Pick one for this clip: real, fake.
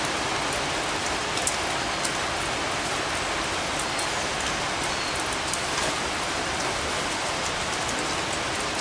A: real